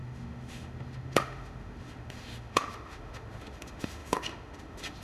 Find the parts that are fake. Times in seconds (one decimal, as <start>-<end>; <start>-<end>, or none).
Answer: 0.0-5.0